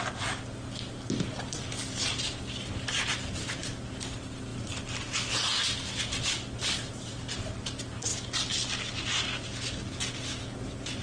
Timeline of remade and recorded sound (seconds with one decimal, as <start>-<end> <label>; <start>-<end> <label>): 0.0-11.0 recorded